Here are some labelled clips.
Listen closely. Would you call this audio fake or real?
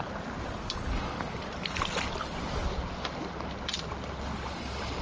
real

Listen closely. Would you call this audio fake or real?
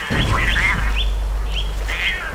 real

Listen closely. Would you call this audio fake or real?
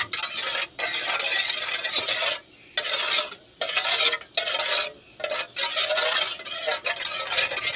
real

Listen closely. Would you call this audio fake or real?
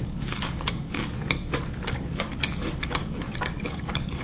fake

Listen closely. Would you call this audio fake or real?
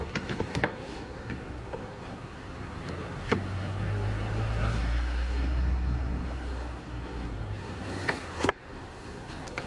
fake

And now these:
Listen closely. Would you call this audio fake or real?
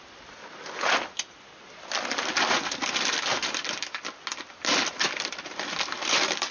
real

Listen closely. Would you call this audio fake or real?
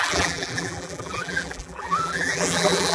fake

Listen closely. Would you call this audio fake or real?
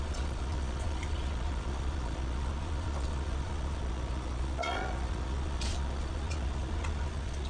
fake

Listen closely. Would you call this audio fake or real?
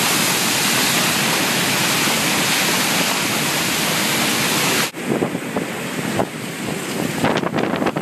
real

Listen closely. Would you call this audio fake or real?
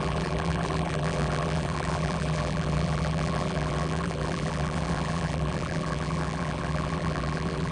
fake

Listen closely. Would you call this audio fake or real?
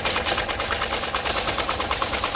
real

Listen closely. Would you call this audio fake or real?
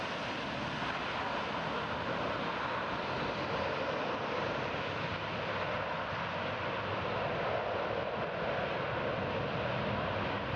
real